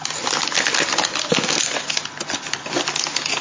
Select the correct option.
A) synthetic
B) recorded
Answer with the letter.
B